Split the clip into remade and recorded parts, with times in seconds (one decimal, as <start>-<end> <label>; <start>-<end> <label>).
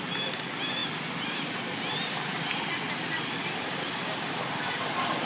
0.0-5.3 recorded